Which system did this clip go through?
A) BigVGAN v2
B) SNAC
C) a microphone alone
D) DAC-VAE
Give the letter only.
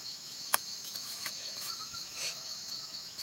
D